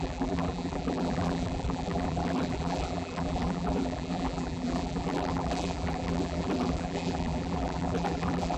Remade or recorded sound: remade